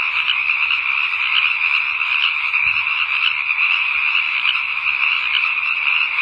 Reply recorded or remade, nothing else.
recorded